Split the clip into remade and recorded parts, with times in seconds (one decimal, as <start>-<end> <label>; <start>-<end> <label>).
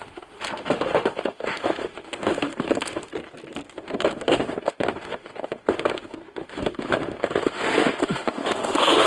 0.0-3.1 remade; 3.1-3.7 recorded; 3.7-9.1 remade